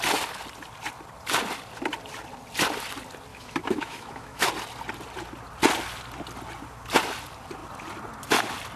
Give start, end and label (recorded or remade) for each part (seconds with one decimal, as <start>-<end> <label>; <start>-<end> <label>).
0.0-3.3 recorded; 3.3-4.5 remade; 4.5-8.8 recorded